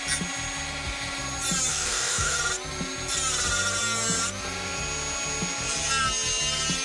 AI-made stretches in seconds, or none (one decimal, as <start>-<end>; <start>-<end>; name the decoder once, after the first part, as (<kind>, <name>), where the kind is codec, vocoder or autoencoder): 1.7-2.4 (codec, DAC)